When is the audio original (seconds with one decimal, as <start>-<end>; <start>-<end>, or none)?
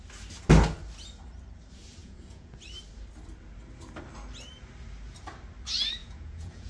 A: 0.0-2.0; 2.6-6.0